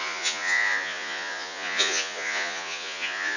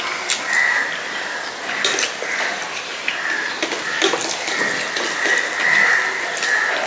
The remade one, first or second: first